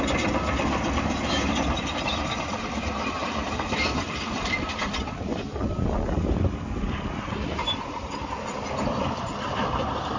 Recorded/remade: remade